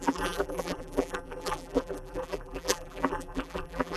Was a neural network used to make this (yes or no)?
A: yes